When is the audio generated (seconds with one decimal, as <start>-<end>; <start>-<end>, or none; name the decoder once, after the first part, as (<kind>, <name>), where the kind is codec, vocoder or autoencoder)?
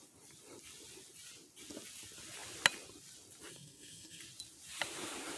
3.5-4.2 (codec, SNAC)